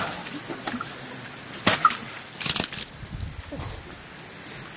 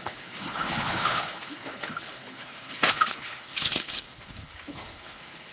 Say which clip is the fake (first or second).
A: second